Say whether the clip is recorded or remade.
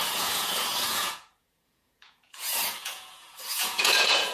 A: remade